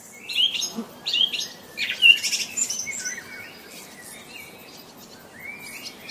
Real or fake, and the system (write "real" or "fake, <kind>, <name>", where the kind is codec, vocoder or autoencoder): real